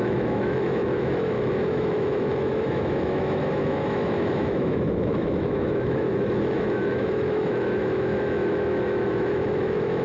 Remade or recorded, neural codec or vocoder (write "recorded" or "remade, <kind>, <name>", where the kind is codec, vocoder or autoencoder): remade, autoencoder, DAC-VAE